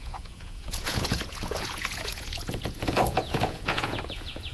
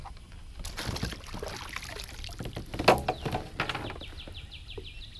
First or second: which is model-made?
first